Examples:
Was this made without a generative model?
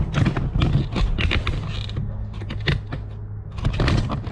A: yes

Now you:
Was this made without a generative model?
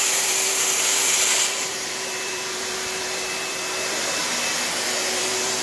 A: no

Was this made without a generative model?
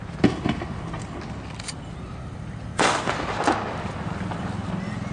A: yes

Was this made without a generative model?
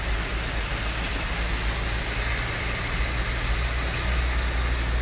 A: yes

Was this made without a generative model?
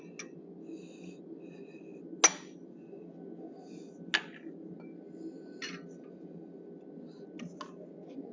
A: yes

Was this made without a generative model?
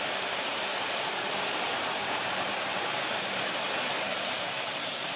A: no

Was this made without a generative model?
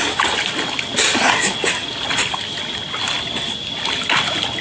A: yes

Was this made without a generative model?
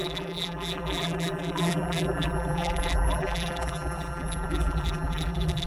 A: no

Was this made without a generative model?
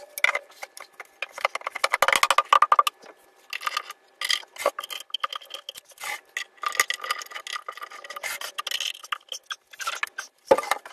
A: yes